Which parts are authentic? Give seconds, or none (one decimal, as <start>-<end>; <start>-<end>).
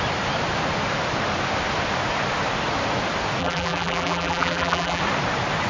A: 0.0-3.4; 5.0-5.7